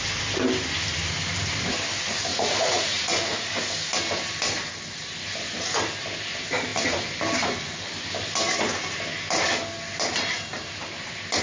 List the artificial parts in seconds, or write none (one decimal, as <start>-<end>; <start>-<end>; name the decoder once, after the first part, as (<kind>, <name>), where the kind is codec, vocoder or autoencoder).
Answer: 2.3-3.5 (vocoder, Vocos)